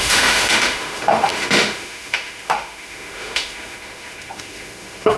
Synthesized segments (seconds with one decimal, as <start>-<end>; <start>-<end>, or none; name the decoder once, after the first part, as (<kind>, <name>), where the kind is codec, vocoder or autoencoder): 0.0-5.2 (autoencoder, DAC-VAE)